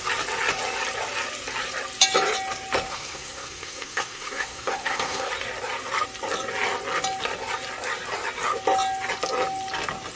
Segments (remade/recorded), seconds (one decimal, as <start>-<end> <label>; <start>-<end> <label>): 0.0-2.9 recorded; 2.9-5.3 remade; 5.3-10.2 recorded